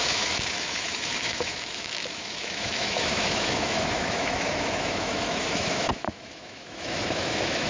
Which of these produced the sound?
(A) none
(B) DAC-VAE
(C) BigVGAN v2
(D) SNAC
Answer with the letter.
B